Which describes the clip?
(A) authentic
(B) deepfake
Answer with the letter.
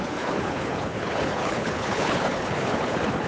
B